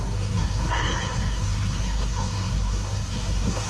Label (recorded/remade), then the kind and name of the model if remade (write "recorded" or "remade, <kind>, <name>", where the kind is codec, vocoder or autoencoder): remade, codec, SNAC